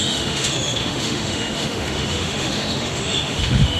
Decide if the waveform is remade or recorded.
remade